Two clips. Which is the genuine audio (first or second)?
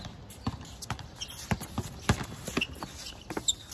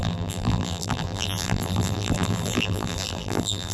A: first